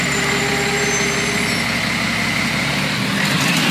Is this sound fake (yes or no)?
no